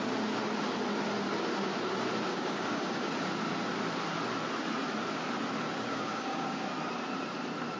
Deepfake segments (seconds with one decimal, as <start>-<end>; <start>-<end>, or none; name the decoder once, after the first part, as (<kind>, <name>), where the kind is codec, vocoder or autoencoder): 2.3-3.1 (codec, DAC); 5.9-6.6